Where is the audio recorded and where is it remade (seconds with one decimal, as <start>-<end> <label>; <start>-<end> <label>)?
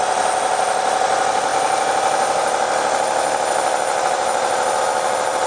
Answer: 0.0-5.5 recorded